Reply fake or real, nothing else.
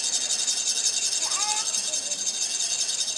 real